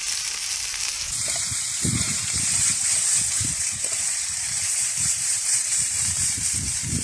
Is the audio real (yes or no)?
no